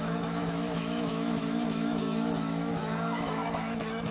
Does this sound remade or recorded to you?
remade